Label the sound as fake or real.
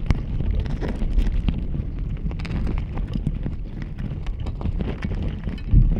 real